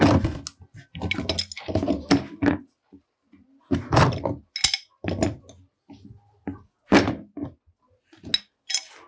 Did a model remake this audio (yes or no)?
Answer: no